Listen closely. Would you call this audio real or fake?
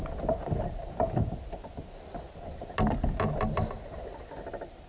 real